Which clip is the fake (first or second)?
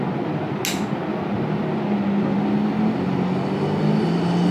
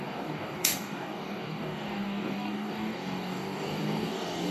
second